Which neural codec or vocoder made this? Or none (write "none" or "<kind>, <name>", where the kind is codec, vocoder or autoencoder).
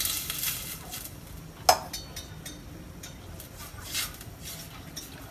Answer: none